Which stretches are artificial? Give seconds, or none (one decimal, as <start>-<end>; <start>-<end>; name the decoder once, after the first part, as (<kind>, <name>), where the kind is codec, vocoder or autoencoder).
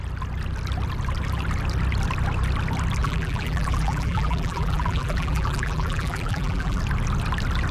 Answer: 3.0-6.8 (vocoder, BigVGAN v2)